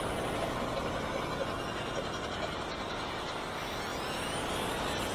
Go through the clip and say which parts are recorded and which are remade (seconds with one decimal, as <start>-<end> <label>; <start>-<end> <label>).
0.0-5.1 recorded